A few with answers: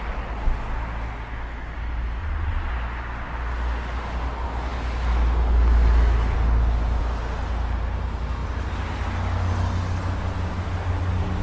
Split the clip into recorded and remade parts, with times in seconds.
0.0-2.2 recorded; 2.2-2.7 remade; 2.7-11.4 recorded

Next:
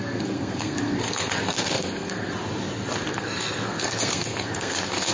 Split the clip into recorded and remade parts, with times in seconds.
0.0-2.3 remade; 2.3-3.1 recorded; 3.1-5.1 remade

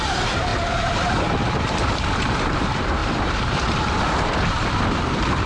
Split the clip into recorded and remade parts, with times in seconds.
0.0-0.5 remade; 0.5-1.6 recorded; 1.6-5.5 remade

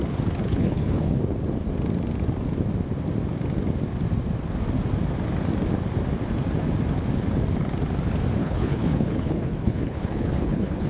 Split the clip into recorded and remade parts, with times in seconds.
0.0-0.4 recorded; 0.4-1.2 remade; 1.2-8.4 recorded; 8.4-10.9 remade